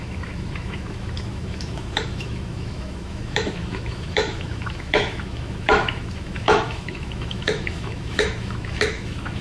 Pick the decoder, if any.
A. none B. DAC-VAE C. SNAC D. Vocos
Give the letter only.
B